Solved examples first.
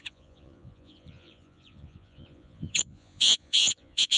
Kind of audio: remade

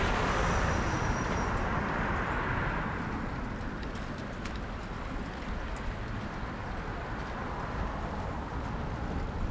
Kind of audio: remade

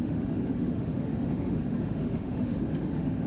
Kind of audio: remade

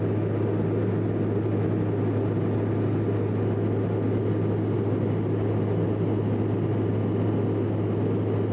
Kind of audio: recorded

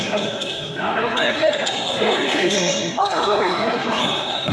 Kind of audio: remade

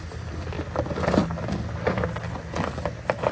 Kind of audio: recorded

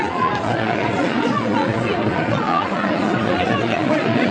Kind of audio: remade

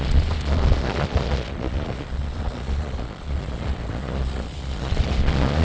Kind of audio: remade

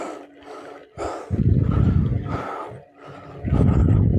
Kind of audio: recorded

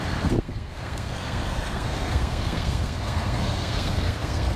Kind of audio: remade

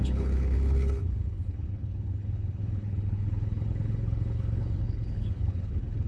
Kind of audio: remade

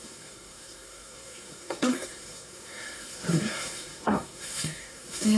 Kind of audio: remade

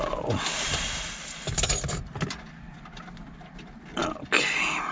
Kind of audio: recorded